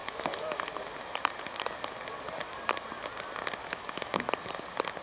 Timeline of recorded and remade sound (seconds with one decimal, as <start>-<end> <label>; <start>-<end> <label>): 0.0-0.7 remade; 0.7-3.6 recorded; 3.6-4.3 remade; 4.3-5.0 recorded